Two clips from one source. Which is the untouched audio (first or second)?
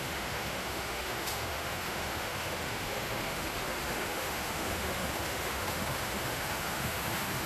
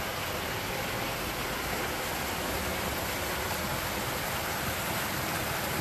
second